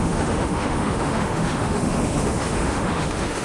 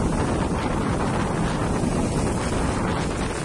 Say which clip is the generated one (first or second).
first